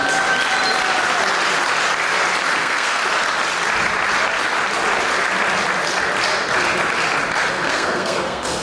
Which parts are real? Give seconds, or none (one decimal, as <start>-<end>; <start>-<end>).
0.0-2.6; 3.0-7.5

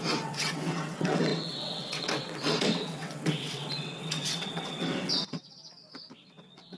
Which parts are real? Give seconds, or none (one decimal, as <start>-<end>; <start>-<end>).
5.6-6.1

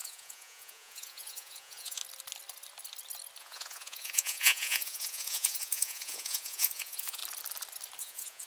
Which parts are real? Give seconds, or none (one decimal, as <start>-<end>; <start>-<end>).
2.0-3.4; 7.2-8.0

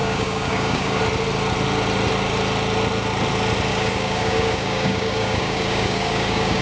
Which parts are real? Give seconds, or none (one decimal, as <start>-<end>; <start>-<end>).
1.0-3.7

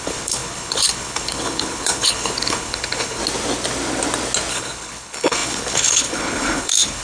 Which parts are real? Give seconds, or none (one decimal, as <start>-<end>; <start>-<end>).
3.2-4.5

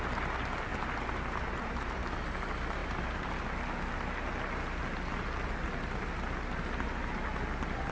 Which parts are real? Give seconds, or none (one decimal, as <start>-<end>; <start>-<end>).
0.0-0.7; 2.0-2.8; 3.4-7.9